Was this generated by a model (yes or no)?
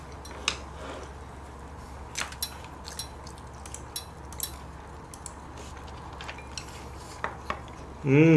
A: no